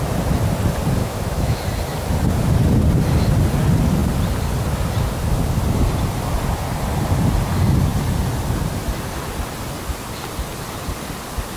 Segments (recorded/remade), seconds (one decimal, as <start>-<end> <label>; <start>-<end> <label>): 0.0-1.0 recorded; 1.0-1.6 remade; 1.6-11.6 recorded